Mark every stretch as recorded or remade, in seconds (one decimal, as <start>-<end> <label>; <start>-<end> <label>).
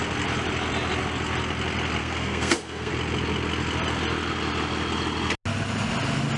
0.0-2.0 recorded; 2.0-2.9 remade; 2.9-6.4 recorded